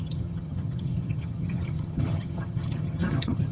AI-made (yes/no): yes